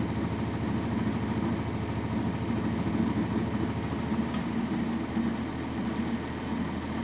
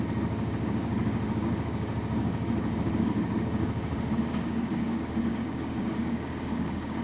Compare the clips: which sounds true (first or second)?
first